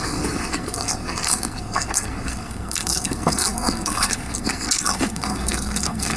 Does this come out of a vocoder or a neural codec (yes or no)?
yes